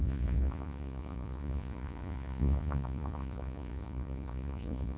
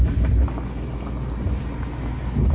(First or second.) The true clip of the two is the second